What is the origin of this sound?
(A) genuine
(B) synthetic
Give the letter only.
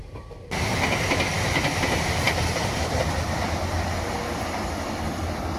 A